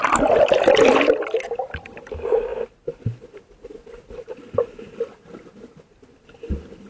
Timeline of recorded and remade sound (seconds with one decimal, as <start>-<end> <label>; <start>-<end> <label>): 0.0-6.9 recorded